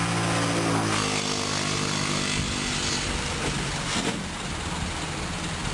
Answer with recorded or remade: recorded